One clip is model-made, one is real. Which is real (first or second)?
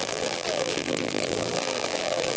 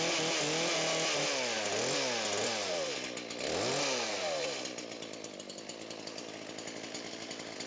second